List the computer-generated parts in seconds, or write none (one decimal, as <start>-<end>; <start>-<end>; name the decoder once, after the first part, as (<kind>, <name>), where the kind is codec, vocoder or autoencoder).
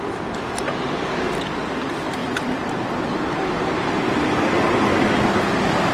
0.0-5.9 (vocoder, BigVGAN v2)